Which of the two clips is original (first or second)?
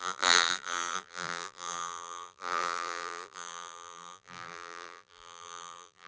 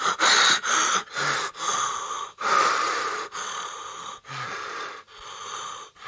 second